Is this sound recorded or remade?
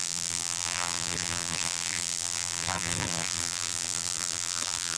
remade